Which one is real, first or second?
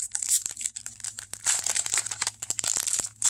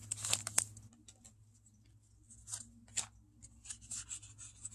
second